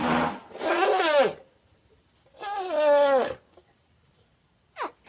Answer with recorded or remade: recorded